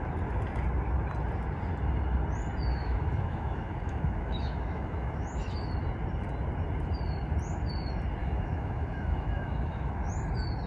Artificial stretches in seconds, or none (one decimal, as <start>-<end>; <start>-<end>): 2.7-5.7; 8.2-10.1

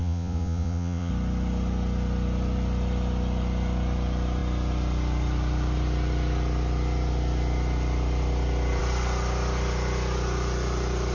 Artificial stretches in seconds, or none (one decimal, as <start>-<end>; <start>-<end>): 0.0-1.1

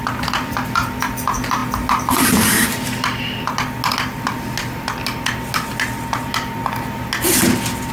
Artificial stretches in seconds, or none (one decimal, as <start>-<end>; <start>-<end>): none